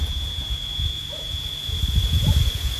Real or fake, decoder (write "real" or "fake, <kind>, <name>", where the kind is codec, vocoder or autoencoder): fake, vocoder, Vocos